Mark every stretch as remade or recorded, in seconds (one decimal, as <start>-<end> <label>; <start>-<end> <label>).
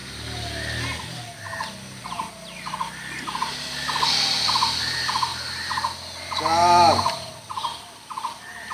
0.0-8.7 recorded